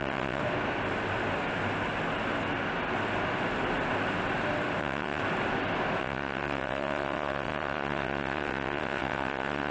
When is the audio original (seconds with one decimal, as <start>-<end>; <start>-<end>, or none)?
0.4-4.8; 5.2-6.0